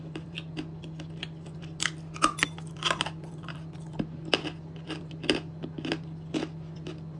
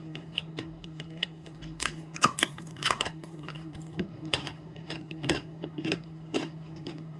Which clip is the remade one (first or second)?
second